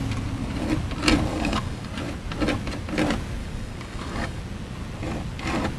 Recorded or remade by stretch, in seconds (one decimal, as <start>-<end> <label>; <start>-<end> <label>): 0.0-1.3 recorded; 1.3-1.9 remade; 1.9-3.4 recorded; 3.4-4.4 remade; 4.4-5.8 recorded